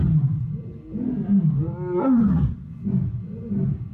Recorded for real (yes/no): yes